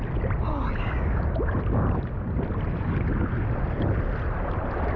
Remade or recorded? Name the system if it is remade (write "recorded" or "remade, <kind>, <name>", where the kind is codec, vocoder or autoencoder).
recorded